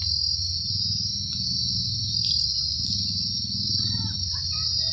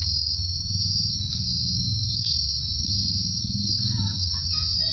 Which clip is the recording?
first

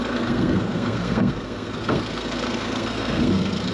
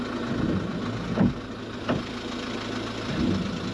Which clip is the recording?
second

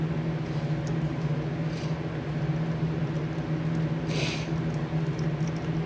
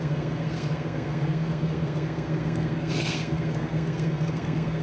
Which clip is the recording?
first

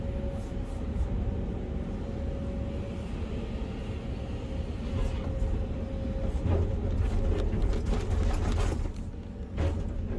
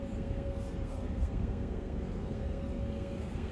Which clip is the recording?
first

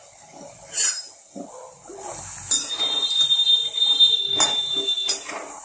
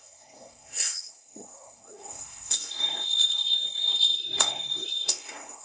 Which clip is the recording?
first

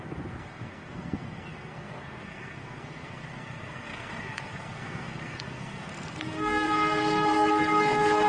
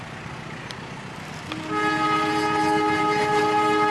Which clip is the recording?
second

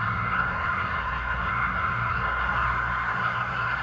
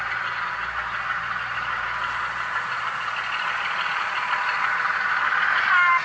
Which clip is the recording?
second